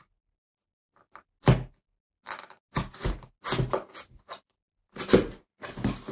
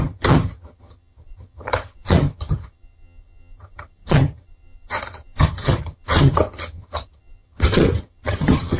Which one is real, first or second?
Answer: first